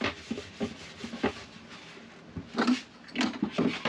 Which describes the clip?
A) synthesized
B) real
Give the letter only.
B